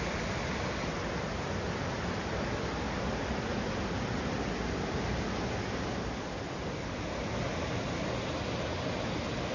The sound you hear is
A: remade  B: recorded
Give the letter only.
B